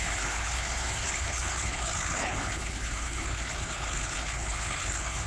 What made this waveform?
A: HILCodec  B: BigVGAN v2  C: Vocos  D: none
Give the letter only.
A